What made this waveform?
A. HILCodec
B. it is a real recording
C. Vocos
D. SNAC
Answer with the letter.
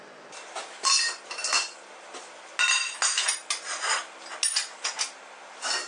B